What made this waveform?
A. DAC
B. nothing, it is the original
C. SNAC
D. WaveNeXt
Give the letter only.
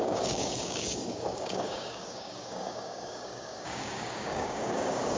A